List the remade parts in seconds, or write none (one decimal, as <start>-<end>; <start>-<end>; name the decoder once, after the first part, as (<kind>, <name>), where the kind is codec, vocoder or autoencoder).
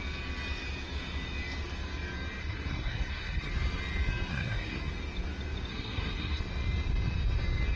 2.4-3.5 (codec, SNAC); 4.3-4.9; 5.7-6.4